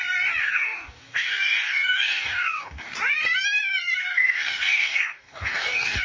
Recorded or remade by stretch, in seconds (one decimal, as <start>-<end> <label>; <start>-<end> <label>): 0.0-0.4 recorded; 0.4-2.9 remade; 2.9-4.0 recorded; 4.0-6.0 remade